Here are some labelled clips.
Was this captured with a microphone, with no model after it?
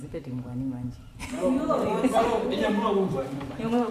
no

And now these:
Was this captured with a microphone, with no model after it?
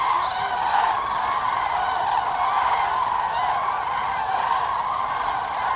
yes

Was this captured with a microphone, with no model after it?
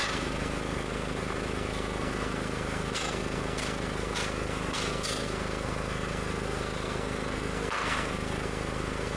no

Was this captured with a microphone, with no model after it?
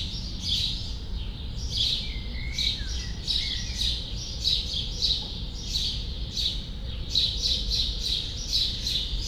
yes